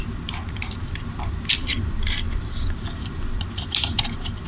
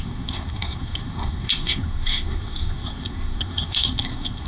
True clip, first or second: first